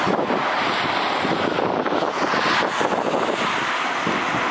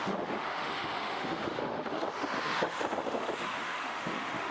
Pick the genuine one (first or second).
first